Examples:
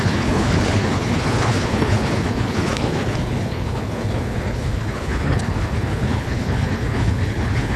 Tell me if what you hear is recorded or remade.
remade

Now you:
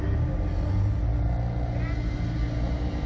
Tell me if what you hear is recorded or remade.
recorded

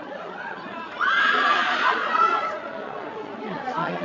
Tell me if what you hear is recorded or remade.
remade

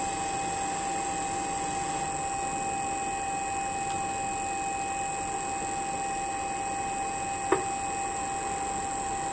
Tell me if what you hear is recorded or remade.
recorded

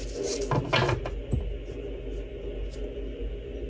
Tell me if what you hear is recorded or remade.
recorded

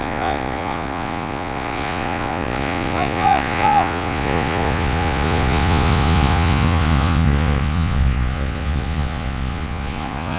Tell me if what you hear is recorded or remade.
remade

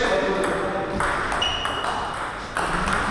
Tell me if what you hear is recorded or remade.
recorded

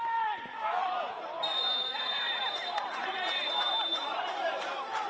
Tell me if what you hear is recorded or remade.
remade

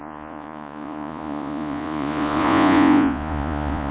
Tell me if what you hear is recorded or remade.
remade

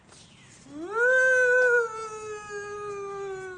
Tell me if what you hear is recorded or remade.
recorded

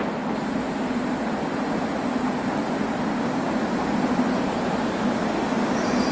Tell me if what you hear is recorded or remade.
recorded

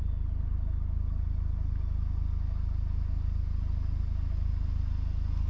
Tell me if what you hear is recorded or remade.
recorded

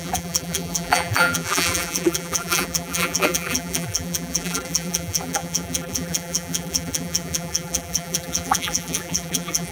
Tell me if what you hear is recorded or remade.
remade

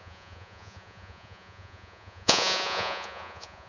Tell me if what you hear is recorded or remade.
remade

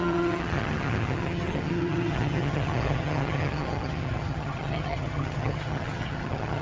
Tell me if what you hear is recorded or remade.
remade